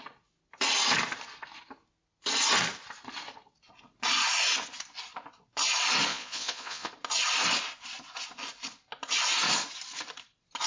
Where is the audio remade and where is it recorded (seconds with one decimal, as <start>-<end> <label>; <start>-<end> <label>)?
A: 0.0-6.1 recorded; 6.1-6.9 remade; 6.9-10.7 recorded